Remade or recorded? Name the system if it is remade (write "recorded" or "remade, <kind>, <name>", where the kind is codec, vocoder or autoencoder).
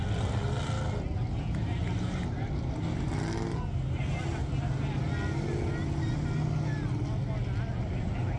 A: recorded